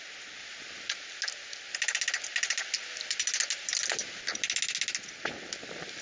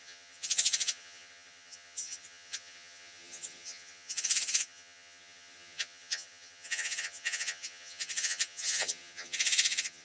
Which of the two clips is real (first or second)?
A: first